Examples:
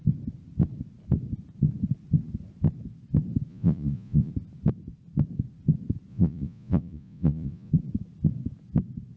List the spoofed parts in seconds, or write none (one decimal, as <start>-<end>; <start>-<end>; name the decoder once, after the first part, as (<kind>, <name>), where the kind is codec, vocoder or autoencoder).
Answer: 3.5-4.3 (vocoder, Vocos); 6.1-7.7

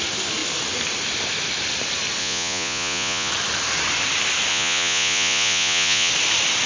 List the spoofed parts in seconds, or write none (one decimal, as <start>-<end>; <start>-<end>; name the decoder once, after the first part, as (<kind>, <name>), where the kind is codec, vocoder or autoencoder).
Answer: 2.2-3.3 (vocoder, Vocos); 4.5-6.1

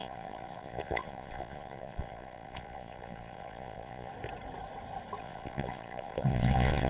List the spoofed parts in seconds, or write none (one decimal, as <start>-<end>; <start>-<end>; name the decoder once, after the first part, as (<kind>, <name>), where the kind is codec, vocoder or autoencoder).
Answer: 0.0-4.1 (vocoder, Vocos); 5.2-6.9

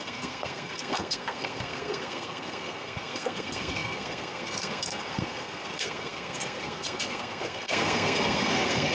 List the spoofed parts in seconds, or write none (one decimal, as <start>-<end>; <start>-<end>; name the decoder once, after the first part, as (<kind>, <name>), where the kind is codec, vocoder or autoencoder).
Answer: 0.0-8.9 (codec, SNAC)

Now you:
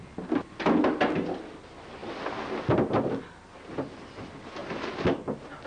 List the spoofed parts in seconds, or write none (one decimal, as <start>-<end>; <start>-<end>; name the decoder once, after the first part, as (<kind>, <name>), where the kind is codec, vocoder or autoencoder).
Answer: none

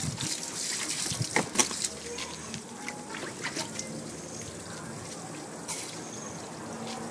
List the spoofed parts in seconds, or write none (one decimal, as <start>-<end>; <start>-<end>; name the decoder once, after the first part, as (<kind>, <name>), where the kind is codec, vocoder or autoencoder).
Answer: none

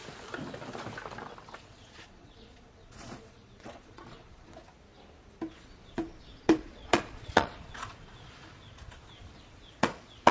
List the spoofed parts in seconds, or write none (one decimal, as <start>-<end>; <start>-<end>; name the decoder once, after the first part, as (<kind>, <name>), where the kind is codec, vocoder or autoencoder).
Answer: 1.6-4.6 (vocoder, Vocos); 5.5-10.3